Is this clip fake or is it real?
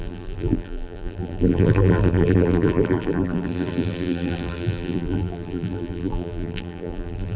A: fake